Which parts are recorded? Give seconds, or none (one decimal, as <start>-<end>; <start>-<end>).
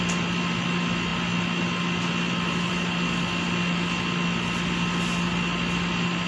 0.0-6.3